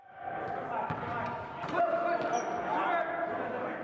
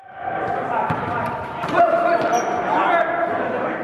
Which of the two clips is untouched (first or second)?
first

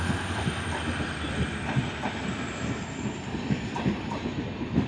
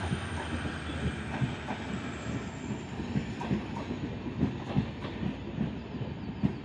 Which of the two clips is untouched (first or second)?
second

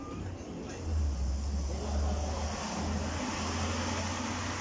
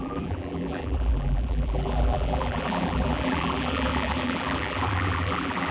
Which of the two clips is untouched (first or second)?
first